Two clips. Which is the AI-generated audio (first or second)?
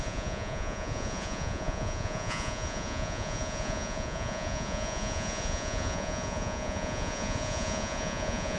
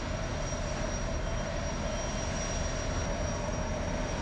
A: first